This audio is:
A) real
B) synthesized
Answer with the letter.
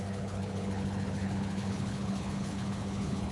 B